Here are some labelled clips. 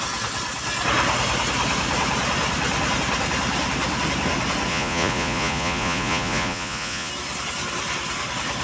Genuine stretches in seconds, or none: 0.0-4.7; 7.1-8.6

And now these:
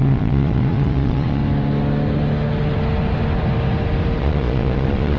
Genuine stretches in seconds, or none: 1.4-4.2

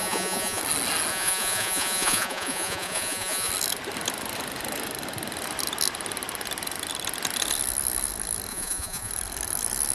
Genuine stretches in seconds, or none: 0.6-1.1; 3.5-8.5; 9.1-9.9

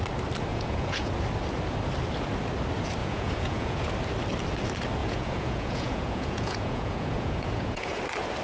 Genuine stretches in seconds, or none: 0.0-0.5; 1.1-3.0; 3.9-5.0; 8.0-8.4

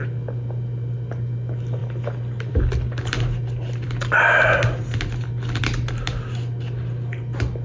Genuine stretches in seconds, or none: 0.0-7.6

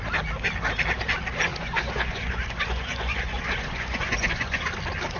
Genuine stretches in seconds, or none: 0.0-1.5; 4.6-5.2

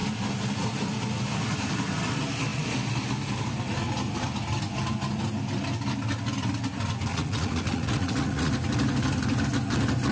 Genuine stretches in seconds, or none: 0.0-7.1; 8.5-10.1

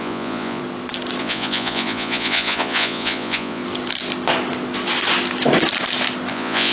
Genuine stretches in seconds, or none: 0.6-1.2; 3.6-6.3